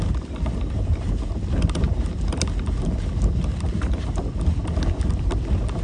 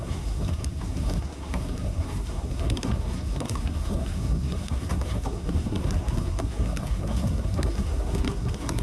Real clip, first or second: first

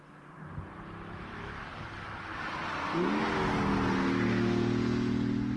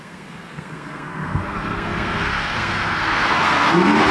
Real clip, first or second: first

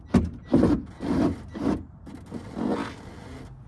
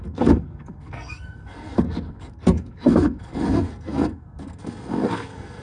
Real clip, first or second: first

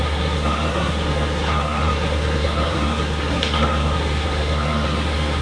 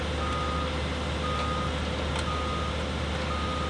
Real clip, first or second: second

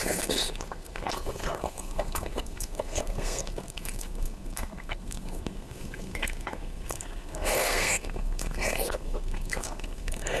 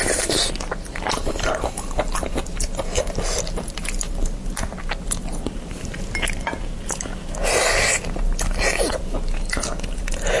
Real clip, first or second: second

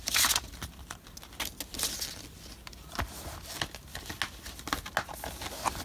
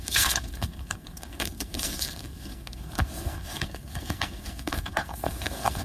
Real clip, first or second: first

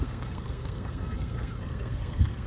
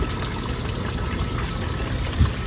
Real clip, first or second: second